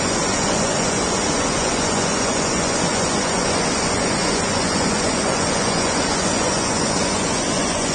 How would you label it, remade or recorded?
remade